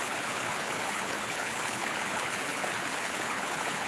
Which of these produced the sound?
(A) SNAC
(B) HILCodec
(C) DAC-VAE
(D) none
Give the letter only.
B